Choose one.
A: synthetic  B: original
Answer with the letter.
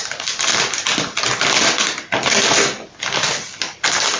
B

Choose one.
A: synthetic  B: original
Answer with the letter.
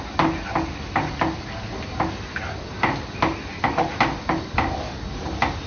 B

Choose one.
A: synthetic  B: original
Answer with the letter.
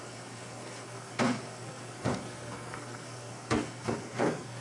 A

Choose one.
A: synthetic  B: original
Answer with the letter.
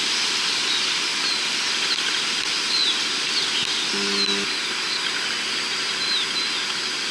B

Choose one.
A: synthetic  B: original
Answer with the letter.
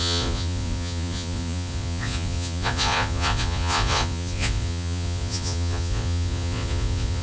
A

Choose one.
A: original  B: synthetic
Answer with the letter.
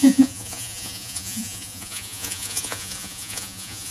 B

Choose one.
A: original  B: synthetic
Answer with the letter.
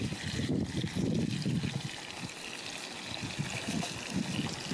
A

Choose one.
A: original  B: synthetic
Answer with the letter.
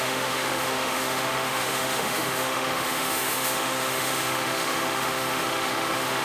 B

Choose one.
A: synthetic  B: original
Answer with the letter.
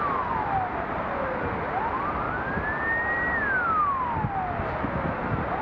B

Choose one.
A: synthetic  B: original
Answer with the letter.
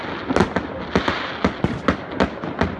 B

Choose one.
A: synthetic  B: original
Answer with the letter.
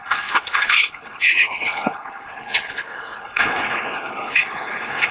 A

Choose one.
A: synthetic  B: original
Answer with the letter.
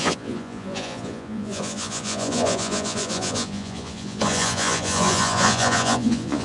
A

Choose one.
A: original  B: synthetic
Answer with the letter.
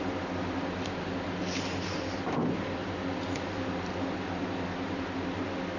A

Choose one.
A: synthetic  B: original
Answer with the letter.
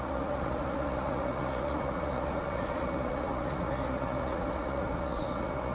A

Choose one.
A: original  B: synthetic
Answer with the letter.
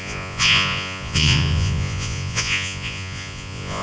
B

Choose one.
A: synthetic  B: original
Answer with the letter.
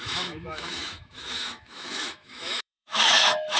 A